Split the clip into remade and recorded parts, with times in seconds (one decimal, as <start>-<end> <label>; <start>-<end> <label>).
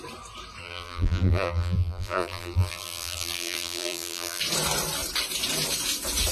0.0-0.6 recorded; 0.6-4.4 remade; 4.4-6.3 recorded